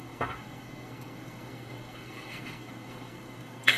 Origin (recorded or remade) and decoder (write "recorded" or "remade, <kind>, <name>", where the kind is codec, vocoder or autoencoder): remade, codec, SNAC